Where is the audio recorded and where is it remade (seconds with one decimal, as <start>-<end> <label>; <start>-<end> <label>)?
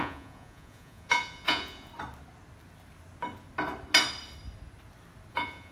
0.0-1.9 remade; 1.9-5.3 recorded; 5.3-5.7 remade